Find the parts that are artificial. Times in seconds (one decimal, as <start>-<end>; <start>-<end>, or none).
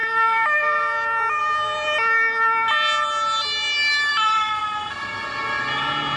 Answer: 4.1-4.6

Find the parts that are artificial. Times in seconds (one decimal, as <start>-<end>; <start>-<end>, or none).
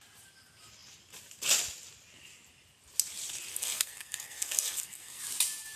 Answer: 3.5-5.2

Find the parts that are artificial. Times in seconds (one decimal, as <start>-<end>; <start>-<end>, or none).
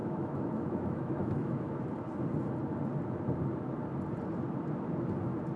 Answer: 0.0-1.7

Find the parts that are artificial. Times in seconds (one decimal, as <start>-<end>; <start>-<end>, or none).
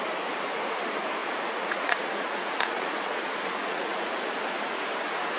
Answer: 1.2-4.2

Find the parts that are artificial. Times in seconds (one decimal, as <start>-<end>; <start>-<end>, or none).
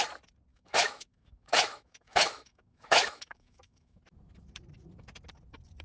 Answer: 0.5-4.0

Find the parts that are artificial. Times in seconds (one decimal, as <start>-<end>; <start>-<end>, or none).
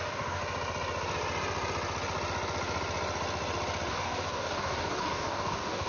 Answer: 0.0-0.4; 3.9-5.9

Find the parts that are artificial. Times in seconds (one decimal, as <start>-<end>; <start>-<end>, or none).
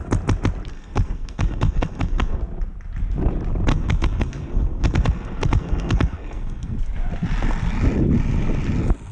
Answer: 0.7-2.4; 3.7-6.8